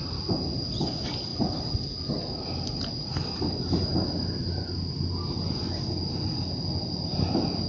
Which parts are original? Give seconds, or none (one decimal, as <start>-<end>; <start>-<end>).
0.0-7.7